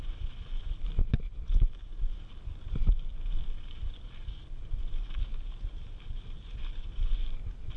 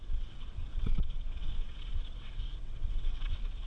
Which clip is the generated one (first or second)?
second